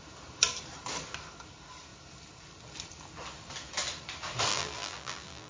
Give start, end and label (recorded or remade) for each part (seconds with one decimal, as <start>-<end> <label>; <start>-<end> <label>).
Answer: 0.0-4.5 recorded; 4.5-5.5 remade